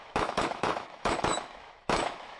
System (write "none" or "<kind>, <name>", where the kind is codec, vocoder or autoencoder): autoencoder, DAC-VAE